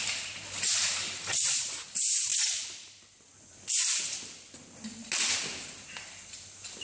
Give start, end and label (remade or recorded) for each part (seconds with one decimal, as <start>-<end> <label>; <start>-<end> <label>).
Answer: 0.0-6.8 recorded